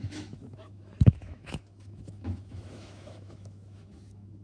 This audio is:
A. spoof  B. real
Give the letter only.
A